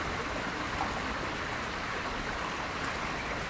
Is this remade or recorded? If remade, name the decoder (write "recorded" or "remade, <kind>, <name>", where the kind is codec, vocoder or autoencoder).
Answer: recorded